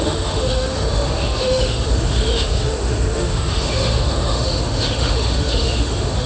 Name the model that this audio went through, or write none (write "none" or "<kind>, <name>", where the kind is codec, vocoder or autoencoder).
autoencoder, DAC-VAE